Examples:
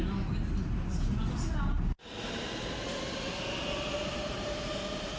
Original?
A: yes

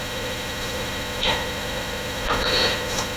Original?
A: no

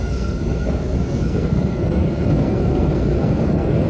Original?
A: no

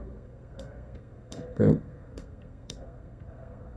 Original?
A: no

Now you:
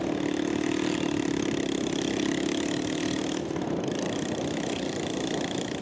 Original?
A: yes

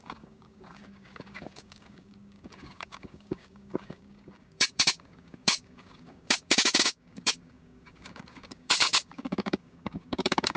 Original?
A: no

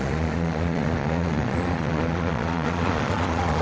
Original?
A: no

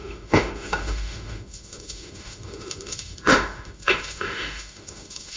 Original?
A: no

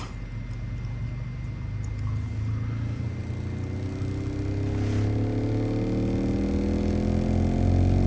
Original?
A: yes